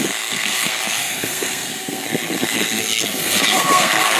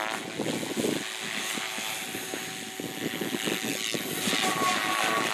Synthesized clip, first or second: first